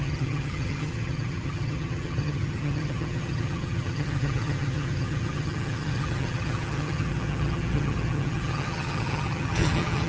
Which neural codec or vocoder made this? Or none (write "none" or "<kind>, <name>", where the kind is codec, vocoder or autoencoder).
vocoder, HiFi-GAN